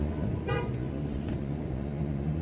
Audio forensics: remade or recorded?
remade